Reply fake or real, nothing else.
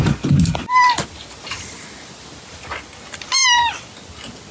real